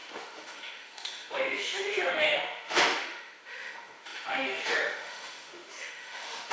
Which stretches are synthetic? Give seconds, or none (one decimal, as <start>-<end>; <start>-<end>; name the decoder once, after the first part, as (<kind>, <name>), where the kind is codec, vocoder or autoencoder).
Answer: 0.0-6.5 (autoencoder, DAC-VAE)